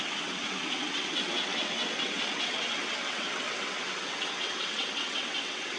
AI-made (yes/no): yes